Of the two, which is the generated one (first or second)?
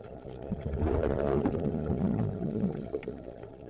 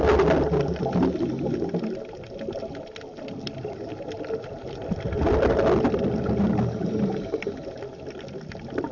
first